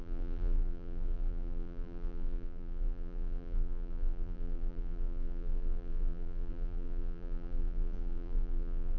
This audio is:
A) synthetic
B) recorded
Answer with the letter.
A